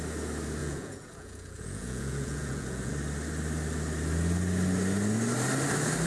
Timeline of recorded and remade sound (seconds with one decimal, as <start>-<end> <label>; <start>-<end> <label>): 0.0-0.6 recorded; 0.6-2.9 remade; 2.9-6.1 recorded